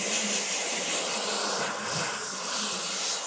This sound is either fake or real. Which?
real